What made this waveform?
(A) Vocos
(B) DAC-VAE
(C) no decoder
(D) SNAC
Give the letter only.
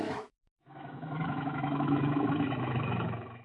B